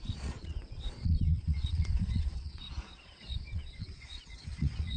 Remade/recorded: remade